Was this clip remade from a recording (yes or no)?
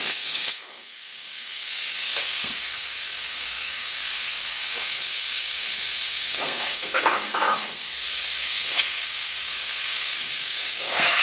yes